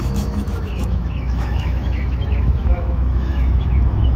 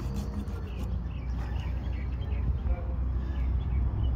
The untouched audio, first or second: second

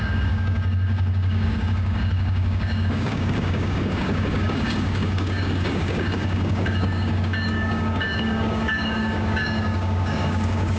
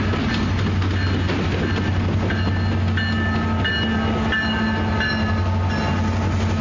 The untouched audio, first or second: second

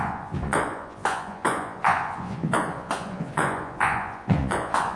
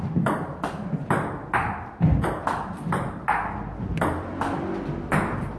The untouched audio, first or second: second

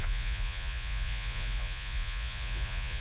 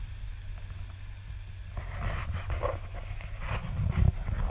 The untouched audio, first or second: second